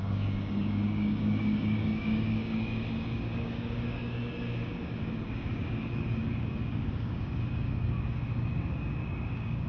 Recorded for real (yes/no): no